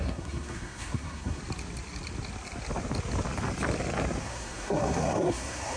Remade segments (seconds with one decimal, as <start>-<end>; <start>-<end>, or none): 0.0-1.4; 4.2-5.8